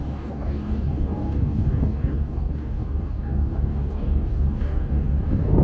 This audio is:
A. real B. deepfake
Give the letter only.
B